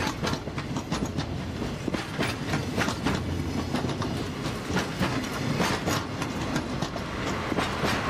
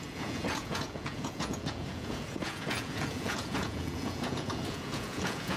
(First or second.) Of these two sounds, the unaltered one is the first